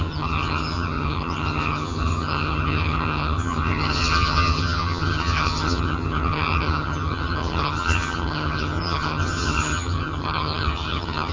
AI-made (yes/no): yes